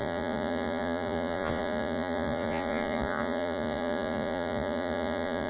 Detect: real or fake fake